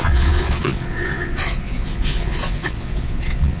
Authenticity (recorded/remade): remade